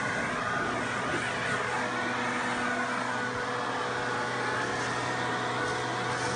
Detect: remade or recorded recorded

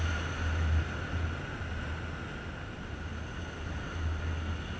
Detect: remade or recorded recorded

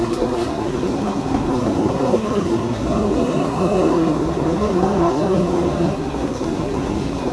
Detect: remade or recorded remade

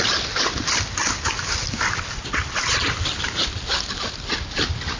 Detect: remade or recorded recorded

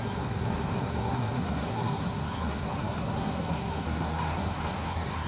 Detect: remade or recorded remade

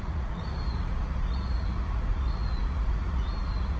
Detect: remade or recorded remade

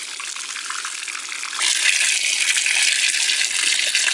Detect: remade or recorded recorded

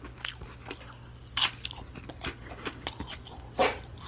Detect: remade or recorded recorded